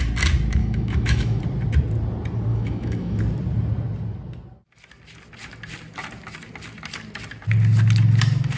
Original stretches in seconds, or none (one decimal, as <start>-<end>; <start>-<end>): 0.0-0.6; 1.4-2.5; 3.2-8.6

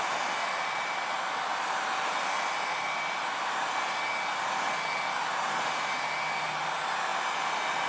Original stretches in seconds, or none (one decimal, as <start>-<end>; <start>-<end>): 0.0-7.9

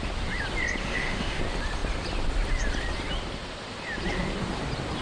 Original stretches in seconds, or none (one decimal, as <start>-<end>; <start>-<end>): 0.0-0.8; 1.4-5.0

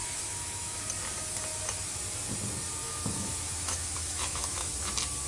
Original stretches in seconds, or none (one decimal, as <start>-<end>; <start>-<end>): 0.8-2.8; 4.7-5.3

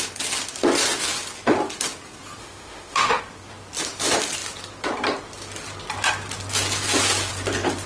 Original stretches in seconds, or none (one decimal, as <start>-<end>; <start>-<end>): 0.0-2.4; 3.2-7.9